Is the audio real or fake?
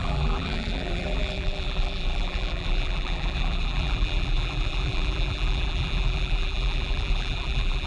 fake